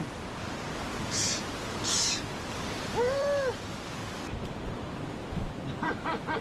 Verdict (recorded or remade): remade